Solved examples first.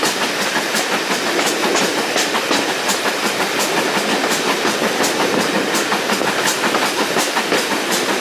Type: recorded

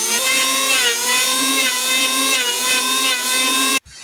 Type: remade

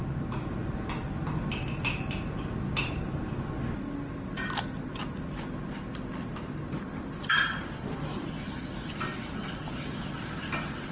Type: recorded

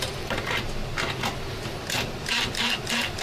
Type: recorded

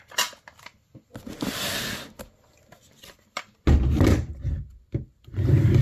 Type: recorded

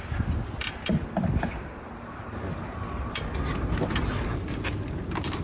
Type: recorded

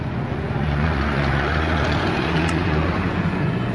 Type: remade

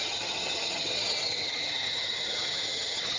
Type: remade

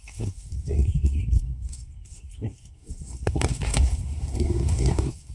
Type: remade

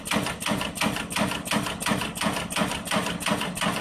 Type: recorded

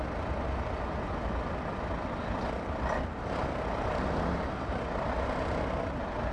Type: recorded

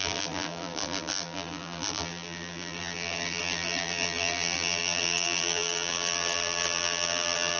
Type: remade